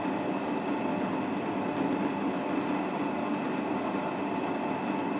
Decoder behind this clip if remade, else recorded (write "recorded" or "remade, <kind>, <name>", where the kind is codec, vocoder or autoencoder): recorded